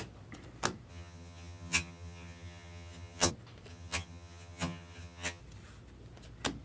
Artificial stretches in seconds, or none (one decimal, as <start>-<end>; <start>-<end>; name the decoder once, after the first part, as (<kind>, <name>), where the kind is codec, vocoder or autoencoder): 0.9-3.3 (vocoder, HiFi-GAN); 3.7-5.4